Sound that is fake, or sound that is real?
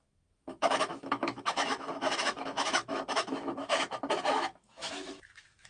fake